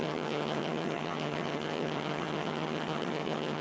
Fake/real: fake